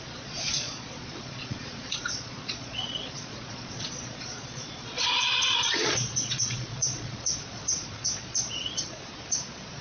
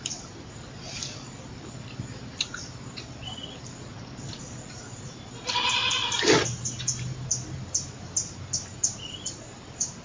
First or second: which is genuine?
second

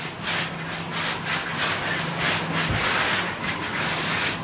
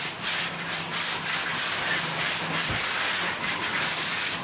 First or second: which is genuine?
first